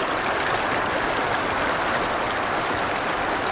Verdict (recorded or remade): recorded